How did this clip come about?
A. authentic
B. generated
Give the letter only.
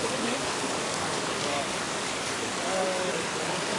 B